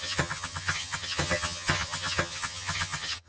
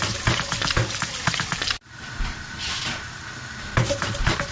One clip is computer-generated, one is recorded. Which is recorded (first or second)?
second